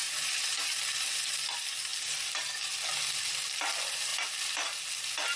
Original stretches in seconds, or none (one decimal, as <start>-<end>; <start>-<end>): 0.0-5.4